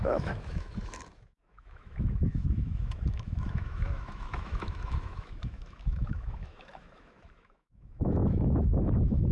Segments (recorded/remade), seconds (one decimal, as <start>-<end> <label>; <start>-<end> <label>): 0.0-9.3 remade